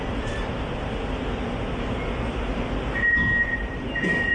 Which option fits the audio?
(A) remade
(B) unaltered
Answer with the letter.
B